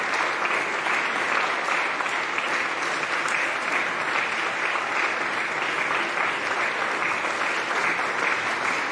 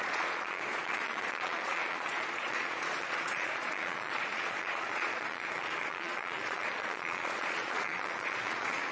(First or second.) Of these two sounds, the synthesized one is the second